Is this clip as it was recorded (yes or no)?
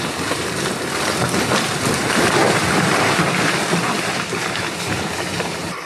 no